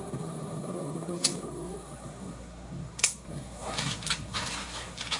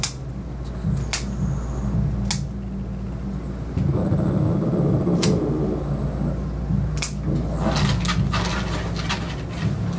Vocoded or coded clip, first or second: first